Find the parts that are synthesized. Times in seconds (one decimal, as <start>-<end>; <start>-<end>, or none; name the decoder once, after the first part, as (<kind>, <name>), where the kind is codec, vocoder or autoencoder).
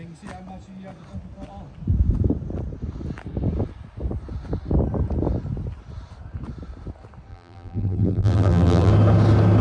7.3-8.9 (vocoder, BigVGAN v2)